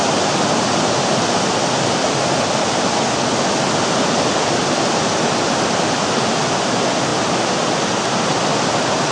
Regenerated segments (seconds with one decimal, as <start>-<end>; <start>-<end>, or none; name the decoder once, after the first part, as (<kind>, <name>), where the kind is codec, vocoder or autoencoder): none